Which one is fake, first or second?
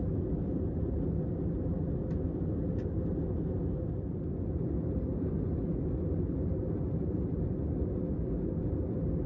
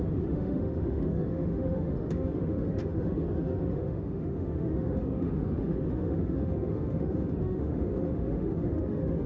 second